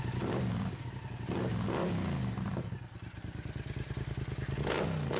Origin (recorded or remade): recorded